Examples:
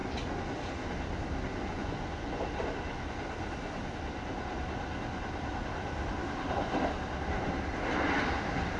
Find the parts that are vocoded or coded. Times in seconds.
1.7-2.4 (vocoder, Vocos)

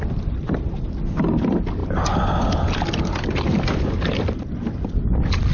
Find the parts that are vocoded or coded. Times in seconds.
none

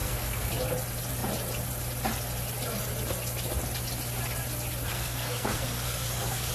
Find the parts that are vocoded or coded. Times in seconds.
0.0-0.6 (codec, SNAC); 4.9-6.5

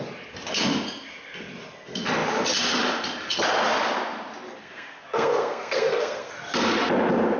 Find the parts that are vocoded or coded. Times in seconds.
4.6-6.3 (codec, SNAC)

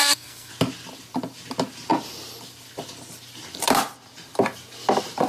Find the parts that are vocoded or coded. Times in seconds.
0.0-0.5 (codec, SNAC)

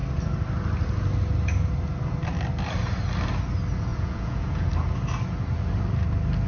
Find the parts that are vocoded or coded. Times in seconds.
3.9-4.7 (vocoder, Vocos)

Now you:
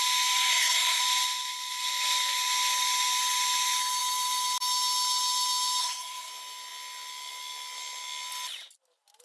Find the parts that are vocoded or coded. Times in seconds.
0.5-1.0 (codec, SNAC); 5.8-6.3

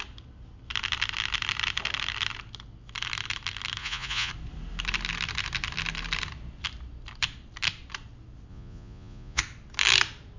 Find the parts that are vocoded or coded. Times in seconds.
3.8-4.3 (vocoder, Vocos); 8.5-9.4